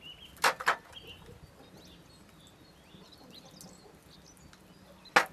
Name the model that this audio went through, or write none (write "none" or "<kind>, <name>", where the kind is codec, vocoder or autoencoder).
none